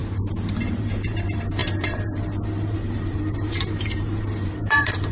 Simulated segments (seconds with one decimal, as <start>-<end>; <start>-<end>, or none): 0.6-5.1